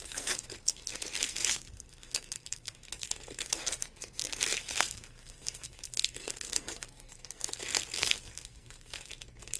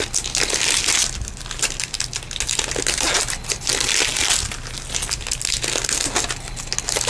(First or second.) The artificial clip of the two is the first